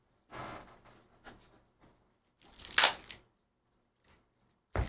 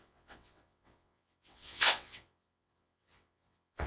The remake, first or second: second